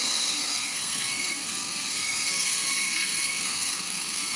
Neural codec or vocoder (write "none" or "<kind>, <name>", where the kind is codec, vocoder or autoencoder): codec, SNAC